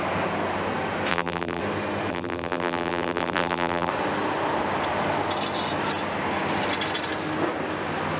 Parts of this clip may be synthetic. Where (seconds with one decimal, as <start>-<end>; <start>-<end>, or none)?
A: 1.1-1.6; 2.1-3.9